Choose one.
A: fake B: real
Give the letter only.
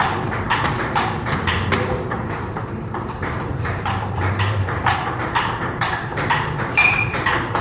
A